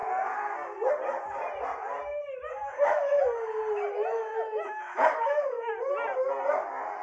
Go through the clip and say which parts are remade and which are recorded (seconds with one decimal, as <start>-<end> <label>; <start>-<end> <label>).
0.0-2.6 recorded; 2.6-3.2 remade; 3.2-4.1 recorded; 4.1-5.7 remade; 5.7-7.0 recorded